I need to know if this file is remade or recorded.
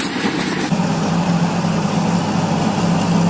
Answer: recorded